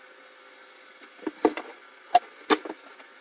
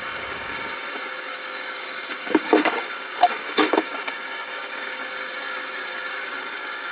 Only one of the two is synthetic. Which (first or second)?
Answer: second